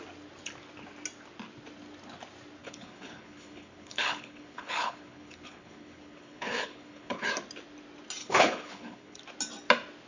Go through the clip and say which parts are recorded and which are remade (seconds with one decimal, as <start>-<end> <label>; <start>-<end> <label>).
0.0-2.6 recorded; 2.6-7.3 remade; 7.3-8.2 recorded; 8.2-9.2 remade; 9.2-10.1 recorded